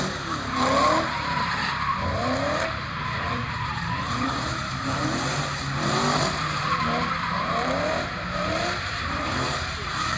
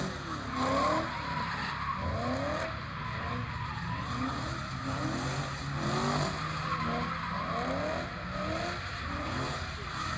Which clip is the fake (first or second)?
first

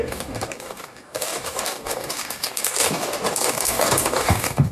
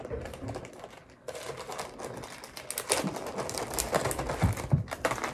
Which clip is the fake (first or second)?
first